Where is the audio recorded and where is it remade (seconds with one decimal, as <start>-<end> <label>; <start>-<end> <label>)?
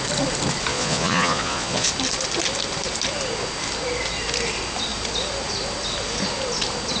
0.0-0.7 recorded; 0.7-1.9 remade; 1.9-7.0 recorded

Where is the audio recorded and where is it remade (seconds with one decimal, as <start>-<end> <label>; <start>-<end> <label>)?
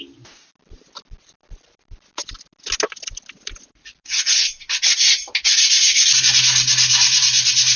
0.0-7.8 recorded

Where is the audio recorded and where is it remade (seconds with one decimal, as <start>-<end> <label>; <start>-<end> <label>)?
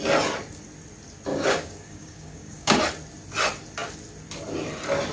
0.0-1.3 recorded; 1.3-2.8 remade; 2.8-5.1 recorded